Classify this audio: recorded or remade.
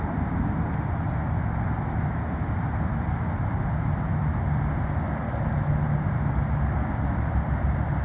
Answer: recorded